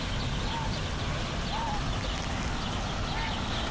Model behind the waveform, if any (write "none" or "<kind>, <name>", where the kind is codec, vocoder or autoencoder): none